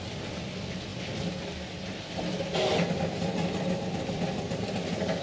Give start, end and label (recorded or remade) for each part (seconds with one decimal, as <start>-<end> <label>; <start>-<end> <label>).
0.0-5.2 recorded